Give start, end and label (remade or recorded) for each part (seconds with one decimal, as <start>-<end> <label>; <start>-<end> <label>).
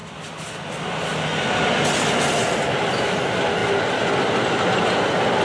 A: 0.0-5.4 recorded